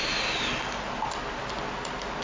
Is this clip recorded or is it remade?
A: recorded